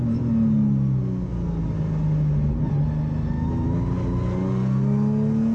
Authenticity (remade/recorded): recorded